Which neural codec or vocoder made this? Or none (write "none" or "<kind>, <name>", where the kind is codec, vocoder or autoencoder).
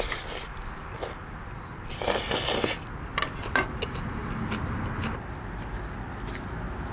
none